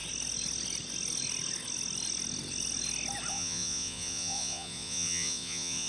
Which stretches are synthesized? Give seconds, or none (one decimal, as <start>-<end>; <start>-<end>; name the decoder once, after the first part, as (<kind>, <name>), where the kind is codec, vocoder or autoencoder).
3.3-5.9 (vocoder, Vocos)